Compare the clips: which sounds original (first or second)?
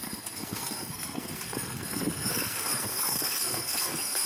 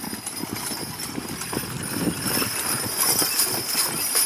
second